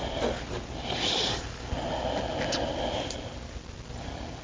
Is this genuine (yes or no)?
yes